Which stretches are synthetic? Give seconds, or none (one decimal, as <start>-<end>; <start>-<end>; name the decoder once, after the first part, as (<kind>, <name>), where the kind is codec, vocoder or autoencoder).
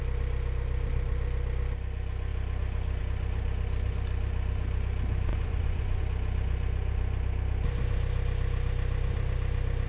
5.3-6.0 (vocoder, Vocos)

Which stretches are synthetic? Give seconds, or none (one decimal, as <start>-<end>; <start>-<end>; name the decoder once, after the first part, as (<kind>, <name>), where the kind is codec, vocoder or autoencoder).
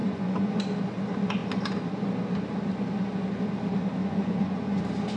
0.0-0.6 (vocoder, Vocos); 4.0-4.8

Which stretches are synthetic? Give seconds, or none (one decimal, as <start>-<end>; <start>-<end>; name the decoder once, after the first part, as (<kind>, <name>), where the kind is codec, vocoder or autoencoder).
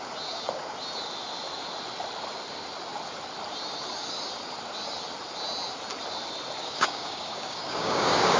6.6-8.4 (codec, DAC)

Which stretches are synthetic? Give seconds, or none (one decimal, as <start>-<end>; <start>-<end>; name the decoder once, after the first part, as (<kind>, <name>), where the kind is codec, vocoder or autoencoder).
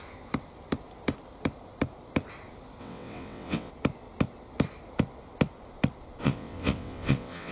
2.8-3.7 (vocoder, WaveNeXt); 6.2-7.5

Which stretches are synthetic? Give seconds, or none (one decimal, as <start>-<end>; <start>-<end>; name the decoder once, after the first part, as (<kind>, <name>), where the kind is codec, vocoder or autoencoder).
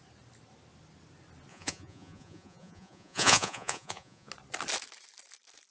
1.5-4.3 (vocoder, Vocos)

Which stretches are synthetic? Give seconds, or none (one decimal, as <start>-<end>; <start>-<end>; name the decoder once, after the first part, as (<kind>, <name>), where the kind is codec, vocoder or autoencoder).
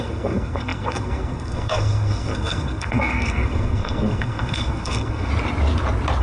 0.0-5.3 (codec, SNAC)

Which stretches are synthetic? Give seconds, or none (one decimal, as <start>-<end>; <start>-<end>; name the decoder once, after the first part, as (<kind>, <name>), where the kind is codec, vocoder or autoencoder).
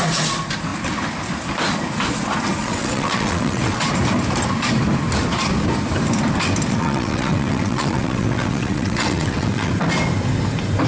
2.6-3.8 (vocoder, WaveNeXt); 6.7-9.7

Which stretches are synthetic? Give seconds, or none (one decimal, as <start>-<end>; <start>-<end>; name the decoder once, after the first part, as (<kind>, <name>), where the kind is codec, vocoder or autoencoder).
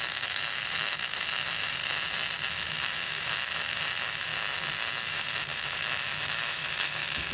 0.0-1.8 (autoencoder, DAC-VAE); 2.5-4.3; 5.1-7.3